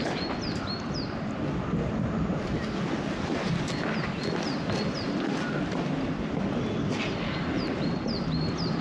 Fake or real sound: real